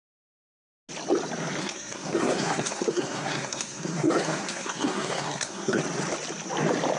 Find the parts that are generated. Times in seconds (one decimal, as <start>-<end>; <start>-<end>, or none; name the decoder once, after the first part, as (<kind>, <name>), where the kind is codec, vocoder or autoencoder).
1.6-5.8 (codec, SNAC)